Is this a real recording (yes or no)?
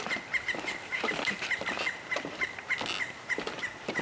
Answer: yes